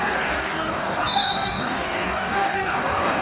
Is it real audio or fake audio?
fake